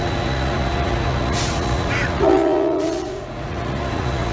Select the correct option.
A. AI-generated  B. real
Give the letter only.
A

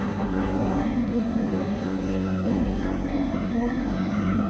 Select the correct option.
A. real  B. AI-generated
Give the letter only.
B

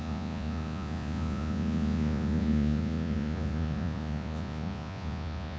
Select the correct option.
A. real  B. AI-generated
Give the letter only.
B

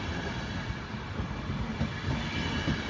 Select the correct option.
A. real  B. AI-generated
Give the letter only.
A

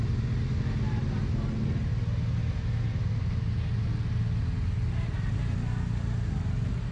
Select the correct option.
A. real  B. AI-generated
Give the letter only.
A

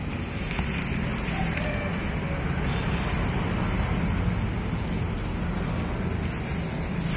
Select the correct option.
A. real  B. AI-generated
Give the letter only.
A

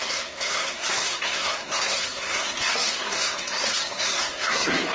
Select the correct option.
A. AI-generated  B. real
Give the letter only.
A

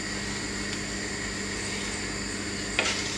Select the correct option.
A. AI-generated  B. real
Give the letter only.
B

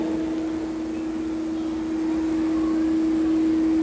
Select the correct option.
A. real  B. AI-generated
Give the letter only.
A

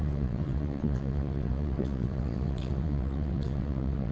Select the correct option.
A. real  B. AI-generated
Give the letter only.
B